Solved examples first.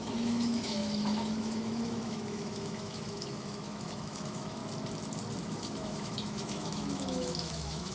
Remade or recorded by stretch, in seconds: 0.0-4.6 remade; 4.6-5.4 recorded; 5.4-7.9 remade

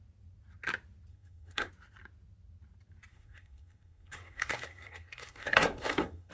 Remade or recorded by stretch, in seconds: 0.0-1.1 recorded; 1.1-1.7 remade; 1.7-3.1 recorded; 3.1-6.3 remade

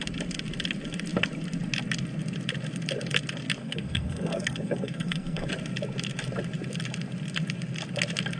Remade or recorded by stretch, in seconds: 0.0-3.6 recorded; 3.6-5.5 remade; 5.5-8.4 recorded

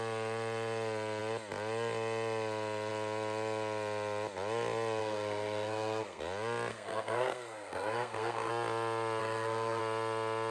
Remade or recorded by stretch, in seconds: 0.0-5.0 recorded; 5.0-6.2 remade; 6.2-6.7 recorded; 6.7-8.5 remade; 8.5-9.2 recorded; 9.2-9.8 remade; 9.8-10.5 recorded

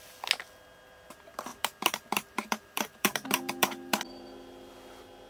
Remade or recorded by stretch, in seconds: 0.0-1.5 recorded; 1.5-4.7 remade; 4.7-5.3 recorded

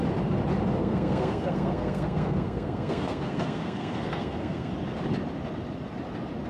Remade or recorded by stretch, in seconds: 0.0-0.8 recorded; 0.8-4.7 remade; 4.7-6.5 recorded